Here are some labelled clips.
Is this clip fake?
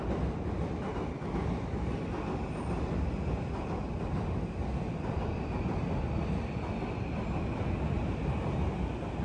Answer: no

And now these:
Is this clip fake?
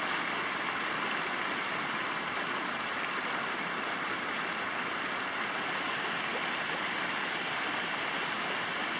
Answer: no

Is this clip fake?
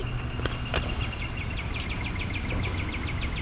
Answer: no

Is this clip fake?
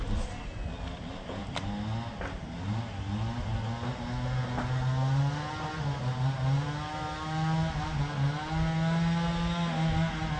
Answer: no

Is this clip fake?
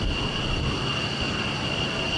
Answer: no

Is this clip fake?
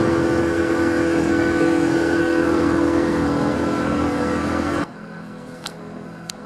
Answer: yes